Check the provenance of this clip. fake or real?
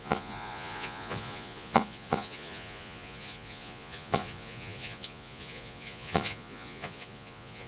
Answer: fake